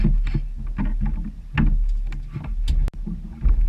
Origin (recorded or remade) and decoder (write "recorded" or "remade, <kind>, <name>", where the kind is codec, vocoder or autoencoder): recorded